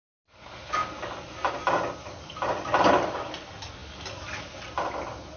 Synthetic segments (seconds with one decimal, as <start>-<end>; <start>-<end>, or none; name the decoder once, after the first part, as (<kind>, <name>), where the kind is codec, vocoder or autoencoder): none